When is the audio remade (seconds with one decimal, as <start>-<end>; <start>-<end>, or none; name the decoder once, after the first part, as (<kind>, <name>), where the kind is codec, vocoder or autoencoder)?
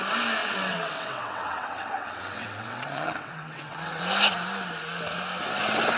0.4-4.0 (vocoder, WaveNeXt)